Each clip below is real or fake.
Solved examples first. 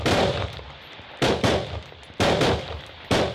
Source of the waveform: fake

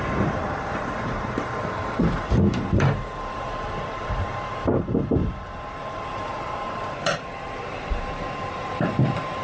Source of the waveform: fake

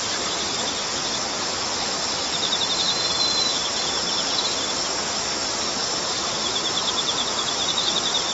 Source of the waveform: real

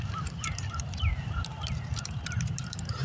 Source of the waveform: fake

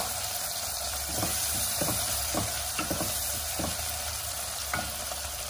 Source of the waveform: fake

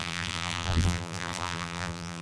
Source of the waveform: fake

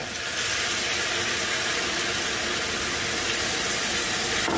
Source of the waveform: real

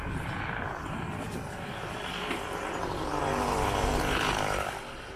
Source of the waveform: real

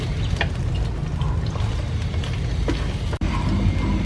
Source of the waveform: real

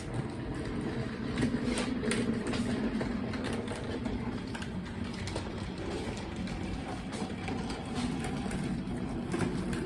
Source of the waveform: real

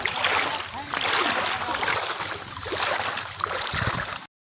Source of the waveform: real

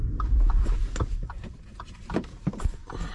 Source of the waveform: fake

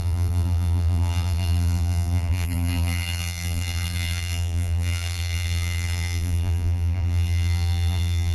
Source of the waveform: fake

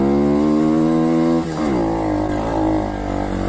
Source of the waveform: real